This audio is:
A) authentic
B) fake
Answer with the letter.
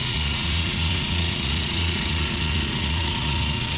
B